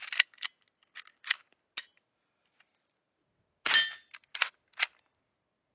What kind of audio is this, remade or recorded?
recorded